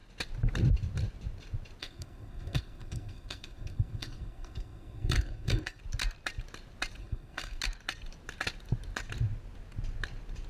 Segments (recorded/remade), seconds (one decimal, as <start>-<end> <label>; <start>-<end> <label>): 0.0-1.8 recorded; 1.8-5.8 remade; 5.8-7.0 recorded; 7.0-7.6 remade; 7.6-10.5 recorded